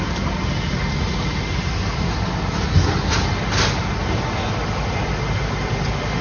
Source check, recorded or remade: recorded